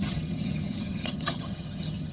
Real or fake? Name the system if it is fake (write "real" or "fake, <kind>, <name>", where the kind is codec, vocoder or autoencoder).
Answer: fake, vocoder, HiFi-GAN